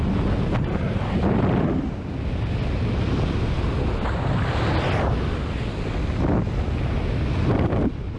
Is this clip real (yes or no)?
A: yes